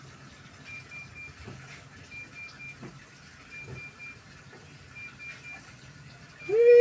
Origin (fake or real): real